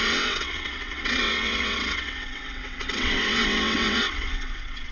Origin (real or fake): fake